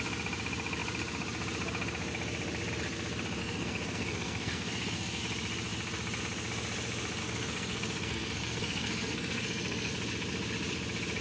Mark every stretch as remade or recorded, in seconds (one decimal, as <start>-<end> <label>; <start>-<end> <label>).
0.0-3.4 recorded; 3.4-5.2 remade; 5.2-7.2 recorded; 7.2-9.9 remade; 9.9-11.2 recorded